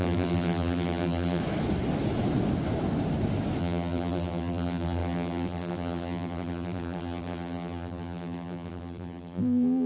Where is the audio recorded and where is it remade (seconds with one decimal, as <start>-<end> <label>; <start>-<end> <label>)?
0.0-1.4 remade; 1.4-3.6 recorded; 3.6-9.9 remade